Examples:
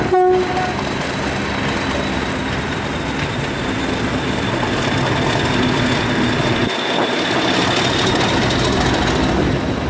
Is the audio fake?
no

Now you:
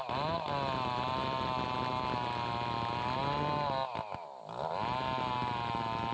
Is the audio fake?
no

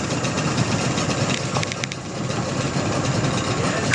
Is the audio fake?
no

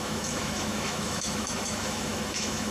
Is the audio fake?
yes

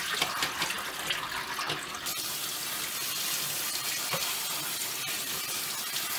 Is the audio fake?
no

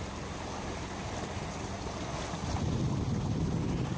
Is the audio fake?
no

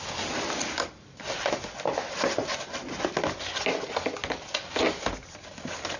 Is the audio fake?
no